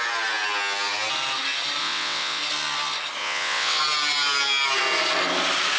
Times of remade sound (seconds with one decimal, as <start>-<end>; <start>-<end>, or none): 1.8-2.4; 3.2-3.8